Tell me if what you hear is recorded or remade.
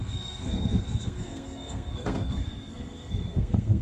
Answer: remade